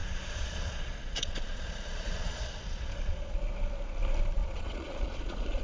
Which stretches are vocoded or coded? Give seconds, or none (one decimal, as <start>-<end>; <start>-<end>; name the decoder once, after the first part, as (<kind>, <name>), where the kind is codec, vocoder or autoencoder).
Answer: 0.0-3.4 (vocoder, Vocos); 4.4-5.6